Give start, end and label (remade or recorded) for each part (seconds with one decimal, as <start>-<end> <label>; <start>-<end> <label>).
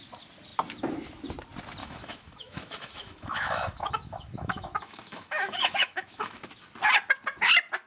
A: 0.0-1.8 recorded; 1.8-6.5 remade; 6.5-7.9 recorded